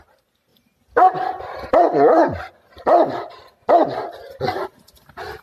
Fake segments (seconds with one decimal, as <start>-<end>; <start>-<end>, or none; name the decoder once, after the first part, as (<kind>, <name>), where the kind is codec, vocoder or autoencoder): none